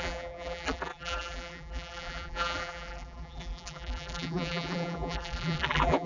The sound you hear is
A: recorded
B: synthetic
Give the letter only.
B